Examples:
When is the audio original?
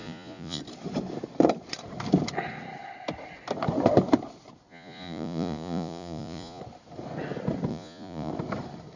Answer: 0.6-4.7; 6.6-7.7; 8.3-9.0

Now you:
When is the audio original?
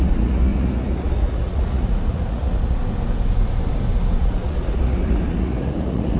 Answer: 2.8-4.2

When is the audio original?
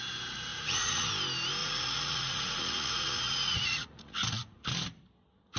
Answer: 0.0-0.5; 1.1-1.6; 4.6-5.6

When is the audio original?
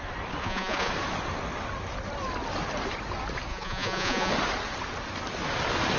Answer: 0.0-0.4; 0.9-3.5; 4.3-6.0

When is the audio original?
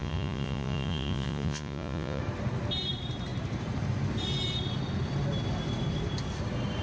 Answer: 2.2-6.8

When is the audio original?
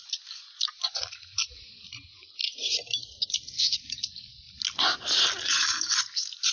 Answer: 0.0-6.5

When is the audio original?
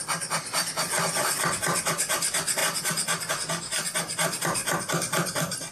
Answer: 0.0-5.7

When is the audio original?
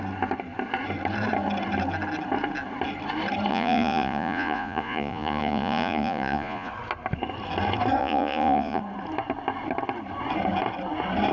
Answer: 0.0-3.5; 6.7-8.0; 8.8-11.3